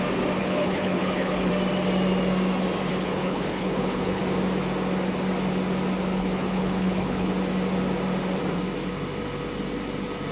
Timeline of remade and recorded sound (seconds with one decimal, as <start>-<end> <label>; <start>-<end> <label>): 0.0-0.4 recorded; 0.4-1.5 remade; 1.5-2.9 recorded; 2.9-4.2 remade; 4.2-6.1 recorded; 6.1-7.3 remade; 7.3-10.3 recorded